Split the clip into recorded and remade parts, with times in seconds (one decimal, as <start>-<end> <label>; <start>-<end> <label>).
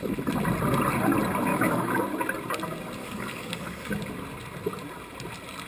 0.0-1.5 recorded; 1.5-2.0 remade; 2.0-3.0 recorded; 3.0-3.9 remade; 3.9-5.7 recorded